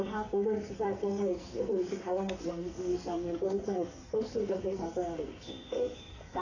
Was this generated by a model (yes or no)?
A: yes